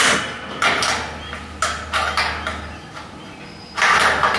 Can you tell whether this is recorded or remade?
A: recorded